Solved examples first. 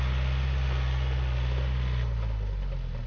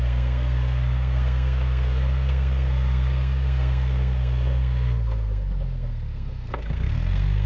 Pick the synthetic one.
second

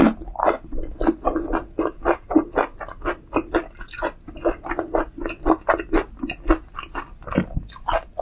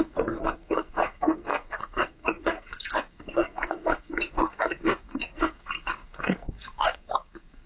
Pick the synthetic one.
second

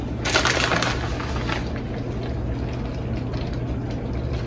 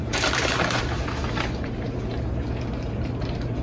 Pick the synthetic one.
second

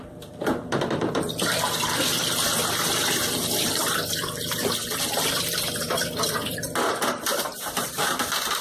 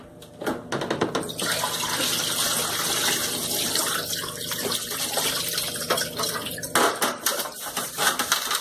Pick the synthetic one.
first